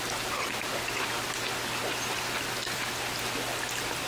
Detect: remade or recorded recorded